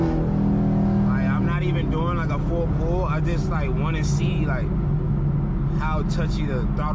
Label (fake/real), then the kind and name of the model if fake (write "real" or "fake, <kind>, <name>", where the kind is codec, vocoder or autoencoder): real